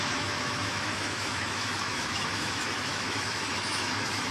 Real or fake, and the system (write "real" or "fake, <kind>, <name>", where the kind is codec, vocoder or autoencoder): fake, autoencoder, DAC-VAE